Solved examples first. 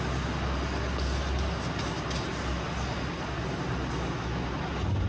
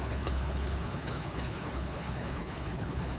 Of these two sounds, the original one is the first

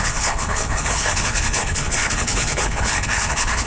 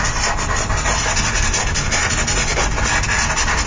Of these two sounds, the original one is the second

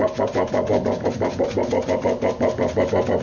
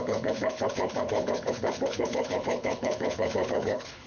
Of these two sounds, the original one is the first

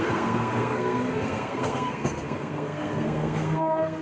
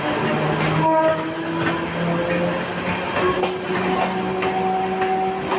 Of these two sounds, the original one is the second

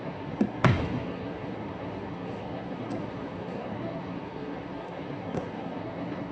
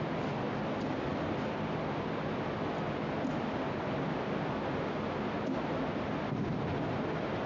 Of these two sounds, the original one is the second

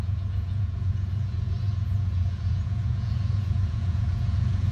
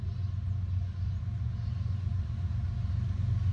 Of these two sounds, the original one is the second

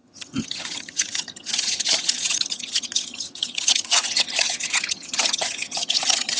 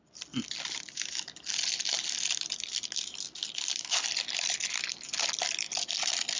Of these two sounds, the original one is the second